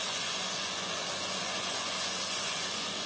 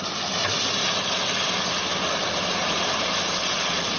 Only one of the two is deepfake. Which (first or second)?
first